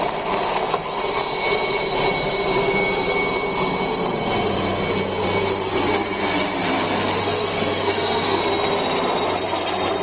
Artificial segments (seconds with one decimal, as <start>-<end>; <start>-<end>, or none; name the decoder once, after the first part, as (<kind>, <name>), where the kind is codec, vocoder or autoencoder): 0.5-1.0 (codec, SNAC); 7.2-8.4